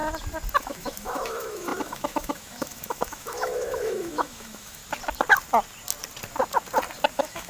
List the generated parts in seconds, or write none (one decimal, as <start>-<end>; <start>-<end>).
0.6-4.8; 7.1-7.5